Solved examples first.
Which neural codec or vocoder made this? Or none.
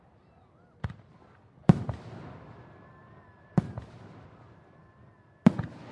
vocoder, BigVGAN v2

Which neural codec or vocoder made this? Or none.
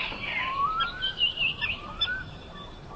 vocoder, BigVGAN v2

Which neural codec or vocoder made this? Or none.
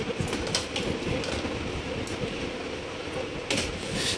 none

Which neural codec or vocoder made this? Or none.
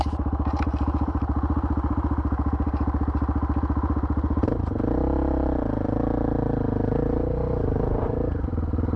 vocoder, BigVGAN v2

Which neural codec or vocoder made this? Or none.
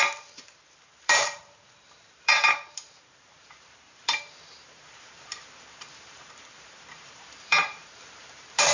vocoder, BigVGAN v2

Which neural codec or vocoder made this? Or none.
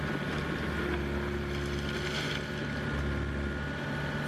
none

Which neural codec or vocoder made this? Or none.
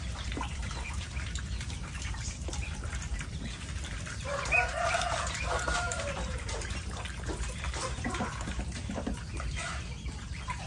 vocoder, BigVGAN v2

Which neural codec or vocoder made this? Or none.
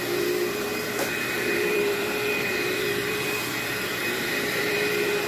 vocoder, BigVGAN v2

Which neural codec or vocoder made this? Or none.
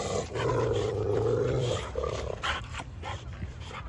vocoder, BigVGAN v2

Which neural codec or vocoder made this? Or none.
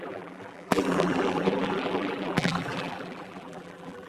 vocoder, BigVGAN v2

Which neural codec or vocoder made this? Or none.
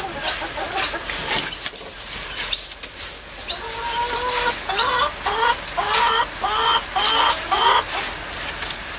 none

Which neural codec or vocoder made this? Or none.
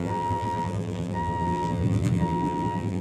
vocoder, BigVGAN v2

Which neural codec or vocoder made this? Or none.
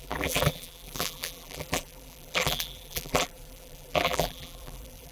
vocoder, BigVGAN v2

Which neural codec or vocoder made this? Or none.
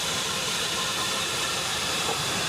vocoder, BigVGAN v2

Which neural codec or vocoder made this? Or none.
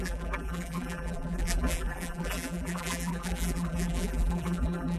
vocoder, BigVGAN v2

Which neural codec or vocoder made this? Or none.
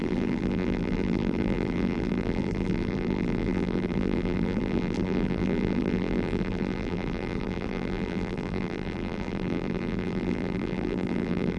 vocoder, BigVGAN v2